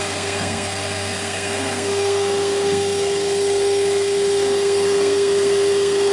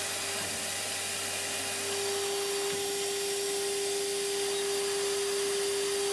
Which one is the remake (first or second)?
first